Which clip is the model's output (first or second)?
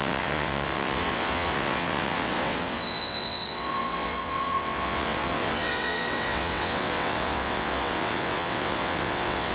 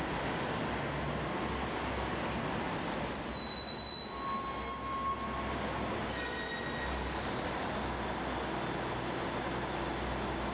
first